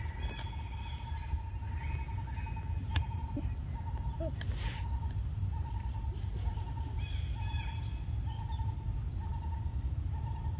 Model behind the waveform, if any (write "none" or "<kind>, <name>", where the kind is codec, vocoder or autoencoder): none